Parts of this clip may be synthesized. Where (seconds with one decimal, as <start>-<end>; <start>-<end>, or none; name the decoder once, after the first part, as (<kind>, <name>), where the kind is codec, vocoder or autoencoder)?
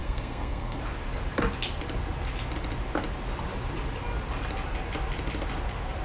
0.0-0.8 (codec, SNAC)